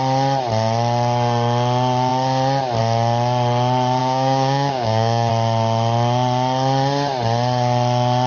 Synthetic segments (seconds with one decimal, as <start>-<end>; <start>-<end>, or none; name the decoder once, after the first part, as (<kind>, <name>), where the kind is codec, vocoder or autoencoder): 4.0-5.3 (codec, DAC)